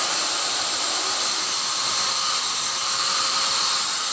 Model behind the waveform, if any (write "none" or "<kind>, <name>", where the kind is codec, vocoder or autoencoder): vocoder, BigVGAN v2